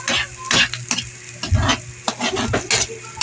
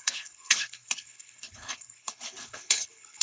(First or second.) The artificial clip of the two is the second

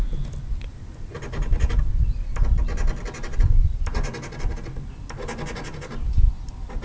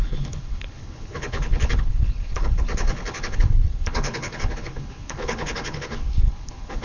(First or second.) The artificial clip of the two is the second